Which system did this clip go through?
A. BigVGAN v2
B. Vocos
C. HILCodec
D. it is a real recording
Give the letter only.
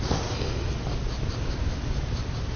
D